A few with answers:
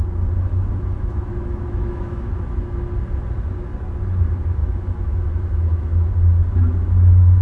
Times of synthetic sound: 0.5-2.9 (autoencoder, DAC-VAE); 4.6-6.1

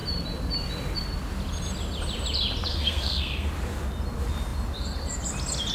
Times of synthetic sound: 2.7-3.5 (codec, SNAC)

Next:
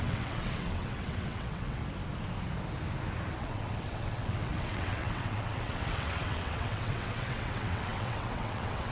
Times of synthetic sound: 0.0-1.8 (vocoder, WaveNeXt); 3.4-8.9